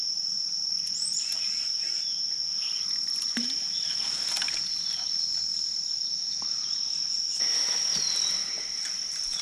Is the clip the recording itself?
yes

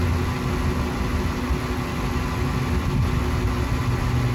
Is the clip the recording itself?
yes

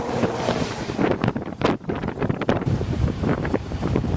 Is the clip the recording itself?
no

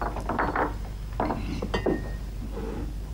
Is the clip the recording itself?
yes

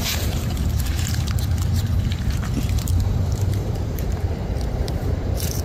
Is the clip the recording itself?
no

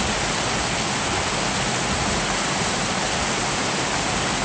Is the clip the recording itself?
yes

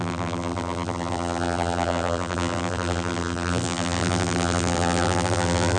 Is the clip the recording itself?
no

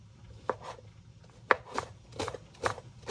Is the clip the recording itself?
yes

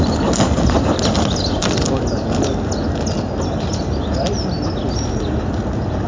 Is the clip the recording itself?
yes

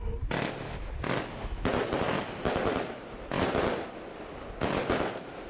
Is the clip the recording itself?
yes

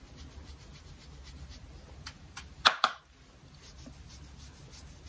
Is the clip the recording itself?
yes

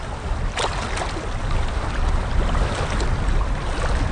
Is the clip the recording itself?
yes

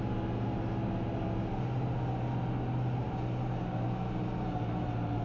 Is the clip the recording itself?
yes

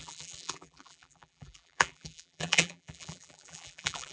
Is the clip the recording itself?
no